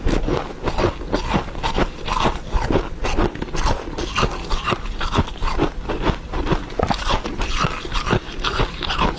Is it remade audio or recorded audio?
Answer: recorded